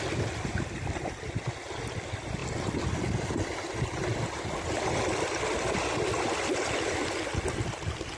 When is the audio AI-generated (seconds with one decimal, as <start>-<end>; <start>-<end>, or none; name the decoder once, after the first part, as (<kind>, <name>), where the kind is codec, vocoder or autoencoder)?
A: none